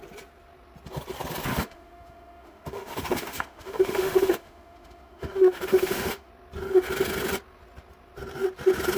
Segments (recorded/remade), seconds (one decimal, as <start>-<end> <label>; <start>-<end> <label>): 0.0-1.5 recorded; 1.5-6.3 remade; 6.3-9.0 recorded

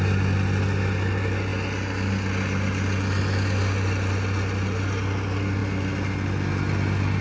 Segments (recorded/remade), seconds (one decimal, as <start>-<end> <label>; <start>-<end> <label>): 0.0-7.2 recorded

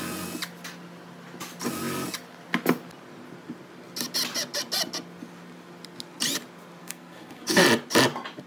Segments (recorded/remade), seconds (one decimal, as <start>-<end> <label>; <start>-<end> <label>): 0.0-6.8 recorded; 6.8-7.6 remade; 7.6-8.5 recorded

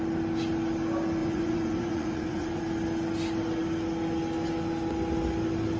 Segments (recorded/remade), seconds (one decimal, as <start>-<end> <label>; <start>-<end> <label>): 0.0-1.2 recorded; 1.2-2.6 remade; 2.6-5.8 recorded